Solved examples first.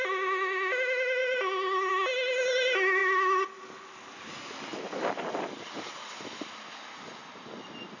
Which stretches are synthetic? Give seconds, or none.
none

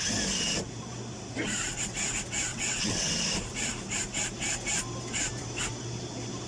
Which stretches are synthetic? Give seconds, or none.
2.5-3.2 (vocoder, WaveNeXt)

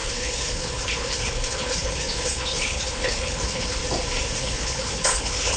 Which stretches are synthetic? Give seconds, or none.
0.0-3.8 (codec, HILCodec); 4.4-5.6

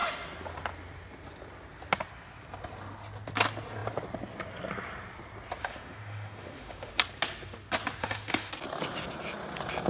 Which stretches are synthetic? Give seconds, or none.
5.6-6.9 (autoencoder, DAC-VAE); 8.0-8.5